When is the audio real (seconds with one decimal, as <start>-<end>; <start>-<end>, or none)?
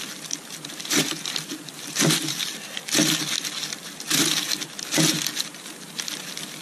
0.0-1.0; 1.5-6.6